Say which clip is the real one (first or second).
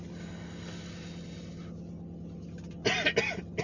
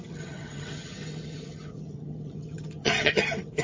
first